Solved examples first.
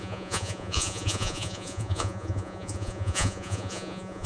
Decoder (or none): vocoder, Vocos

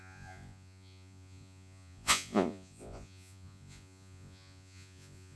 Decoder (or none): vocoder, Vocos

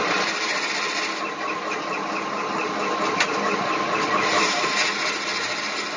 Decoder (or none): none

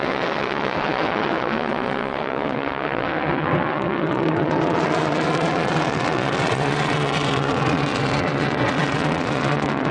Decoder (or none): vocoder, WaveNeXt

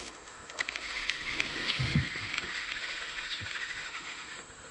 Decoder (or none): autoencoder, DAC-VAE